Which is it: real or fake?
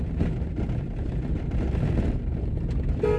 real